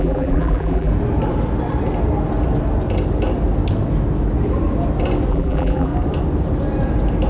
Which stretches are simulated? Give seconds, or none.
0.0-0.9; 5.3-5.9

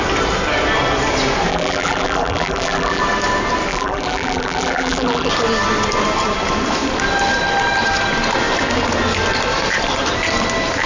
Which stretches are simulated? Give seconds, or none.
1.5-3.0; 3.7-5.3

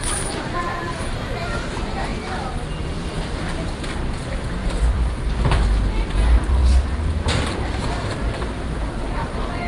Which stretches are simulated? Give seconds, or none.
0.0-2.1; 2.8-6.6; 7.2-9.7

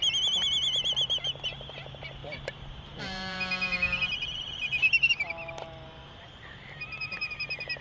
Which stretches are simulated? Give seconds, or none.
2.2-5.1; 6.0-7.3

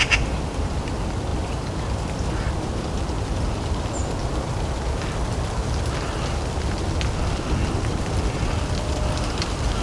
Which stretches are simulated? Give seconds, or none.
0.0-4.2; 7.1-9.8